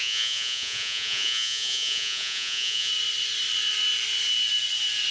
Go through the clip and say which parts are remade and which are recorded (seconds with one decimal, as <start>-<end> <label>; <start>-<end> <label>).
0.0-2.9 remade; 2.9-5.1 recorded